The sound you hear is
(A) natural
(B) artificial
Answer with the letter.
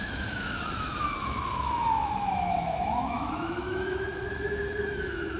B